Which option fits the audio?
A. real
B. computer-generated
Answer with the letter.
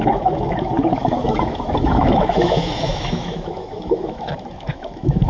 B